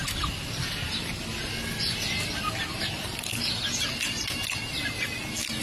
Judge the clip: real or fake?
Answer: real